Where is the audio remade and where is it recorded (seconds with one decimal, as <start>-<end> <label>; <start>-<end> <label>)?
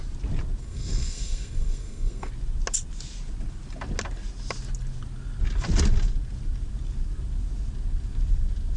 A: 0.0-0.6 recorded; 0.6-2.3 remade; 2.3-8.8 recorded